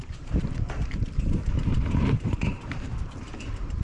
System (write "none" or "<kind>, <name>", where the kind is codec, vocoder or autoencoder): vocoder, BigVGAN v2